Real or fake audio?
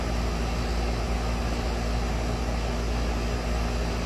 real